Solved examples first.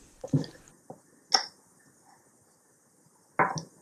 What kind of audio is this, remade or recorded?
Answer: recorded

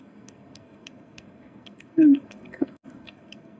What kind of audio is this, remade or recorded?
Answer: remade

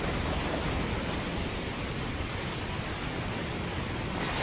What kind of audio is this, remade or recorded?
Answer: recorded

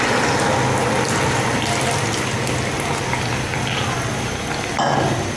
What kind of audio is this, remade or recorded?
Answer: recorded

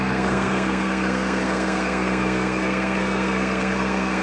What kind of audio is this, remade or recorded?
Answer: remade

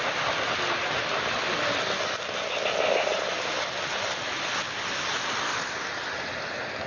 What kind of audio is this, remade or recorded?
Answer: recorded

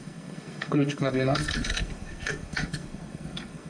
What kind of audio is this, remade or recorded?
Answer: remade